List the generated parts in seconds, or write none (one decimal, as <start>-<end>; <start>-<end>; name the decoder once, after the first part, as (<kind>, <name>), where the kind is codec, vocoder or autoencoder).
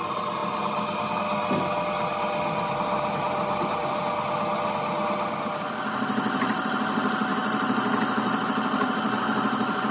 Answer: none